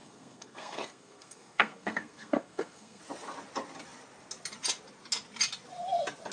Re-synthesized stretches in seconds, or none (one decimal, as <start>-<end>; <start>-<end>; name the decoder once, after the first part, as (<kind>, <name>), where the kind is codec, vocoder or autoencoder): 0.0-3.0 (codec, SNAC)